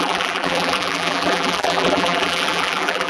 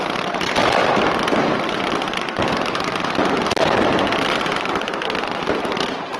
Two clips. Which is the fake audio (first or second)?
first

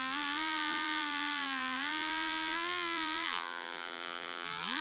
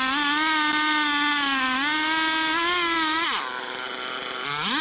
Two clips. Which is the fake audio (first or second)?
first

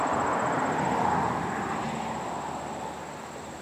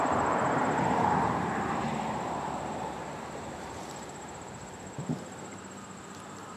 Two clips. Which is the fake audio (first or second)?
second